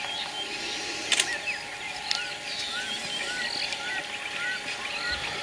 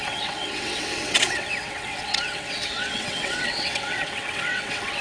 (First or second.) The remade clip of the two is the second